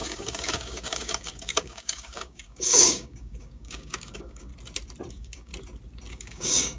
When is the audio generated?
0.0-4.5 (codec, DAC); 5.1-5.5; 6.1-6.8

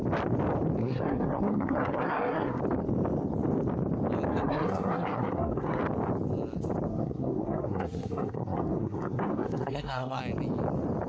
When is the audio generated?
0.8-2.6 (codec, SNAC); 4.3-5.8; 6.9-10.2

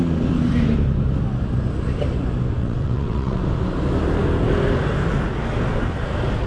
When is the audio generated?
2.6-3.4 (vocoder, WaveNeXt)

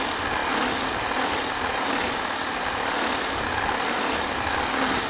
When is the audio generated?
none